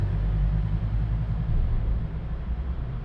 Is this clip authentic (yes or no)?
yes